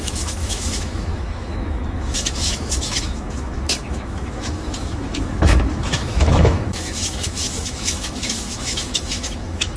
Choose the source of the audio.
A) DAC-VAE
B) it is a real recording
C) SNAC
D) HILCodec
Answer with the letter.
A